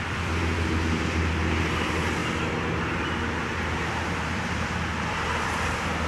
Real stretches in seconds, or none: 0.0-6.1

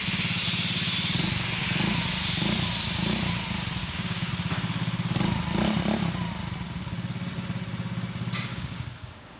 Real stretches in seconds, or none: 0.0-3.8; 4.3-8.5

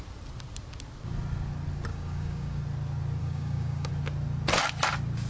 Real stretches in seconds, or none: 0.0-1.9; 2.6-3.2; 3.9-5.3

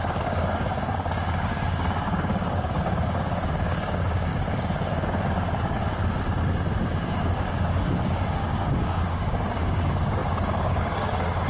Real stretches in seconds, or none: 4.3-6.8

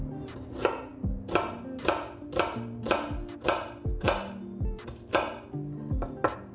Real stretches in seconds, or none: 0.0-6.5

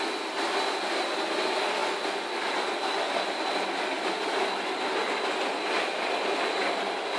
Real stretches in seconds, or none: 0.0-7.2

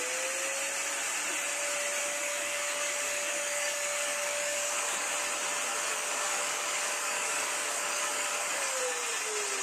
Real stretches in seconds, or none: 0.0-2.0; 5.1-5.7; 8.8-9.6